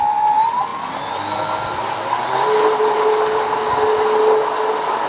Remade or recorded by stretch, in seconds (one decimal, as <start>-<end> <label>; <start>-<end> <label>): 0.0-5.1 recorded